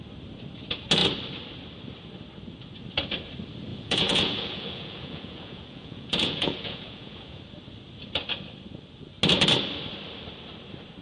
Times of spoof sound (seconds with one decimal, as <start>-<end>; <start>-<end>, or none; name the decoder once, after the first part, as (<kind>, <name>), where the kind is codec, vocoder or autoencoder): 3.7-7.4 (vocoder, Vocos)